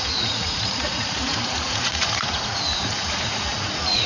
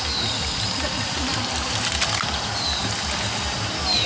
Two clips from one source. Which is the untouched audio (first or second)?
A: second